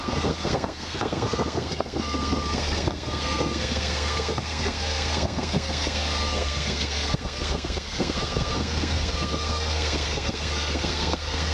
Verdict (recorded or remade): remade